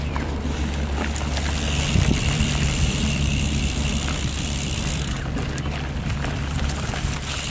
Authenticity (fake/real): fake